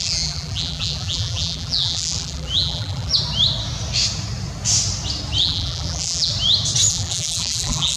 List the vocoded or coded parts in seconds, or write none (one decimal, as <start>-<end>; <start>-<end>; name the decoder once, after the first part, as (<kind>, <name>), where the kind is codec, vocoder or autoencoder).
0.0-3.1 (vocoder, BigVGAN v2); 5.4-6.3; 6.9-8.0